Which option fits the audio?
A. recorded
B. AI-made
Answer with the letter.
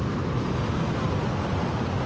A